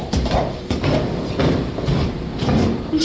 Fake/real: fake